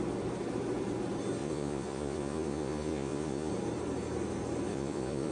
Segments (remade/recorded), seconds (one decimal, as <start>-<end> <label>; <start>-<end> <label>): 0.0-1.4 recorded; 1.4-3.5 remade; 3.5-4.7 recorded; 4.7-5.3 remade